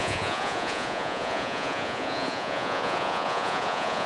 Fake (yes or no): yes